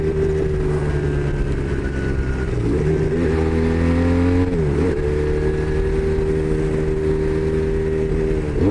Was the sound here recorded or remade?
recorded